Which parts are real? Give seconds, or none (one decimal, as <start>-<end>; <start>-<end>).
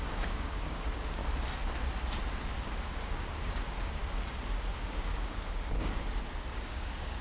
1.2-2.6; 4.0-4.7; 6.0-6.5